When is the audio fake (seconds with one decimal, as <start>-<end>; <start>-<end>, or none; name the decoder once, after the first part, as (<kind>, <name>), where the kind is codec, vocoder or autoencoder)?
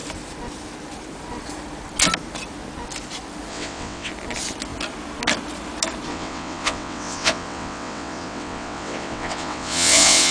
3.5-4.1 (vocoder, WaveNeXt); 6.1-10.3